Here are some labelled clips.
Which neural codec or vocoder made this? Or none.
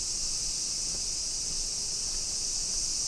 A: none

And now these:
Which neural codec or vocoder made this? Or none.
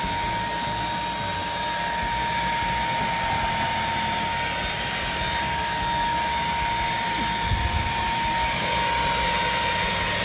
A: none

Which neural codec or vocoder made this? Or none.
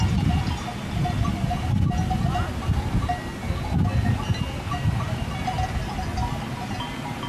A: none